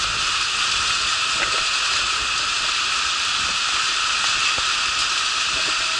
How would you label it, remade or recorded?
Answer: recorded